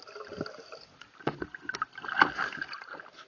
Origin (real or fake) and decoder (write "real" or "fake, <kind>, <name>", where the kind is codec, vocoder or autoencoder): real